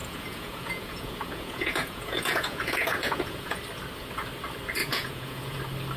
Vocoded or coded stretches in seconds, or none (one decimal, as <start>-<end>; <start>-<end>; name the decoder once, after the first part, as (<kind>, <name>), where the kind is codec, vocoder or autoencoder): 0.0-3.6 (vocoder, Vocos); 4.8-5.6